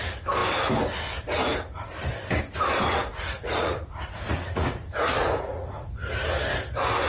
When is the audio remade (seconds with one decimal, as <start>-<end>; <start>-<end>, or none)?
3.1-6.1